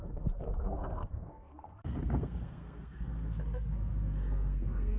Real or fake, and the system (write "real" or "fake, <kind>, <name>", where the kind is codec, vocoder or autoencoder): fake, codec, SNAC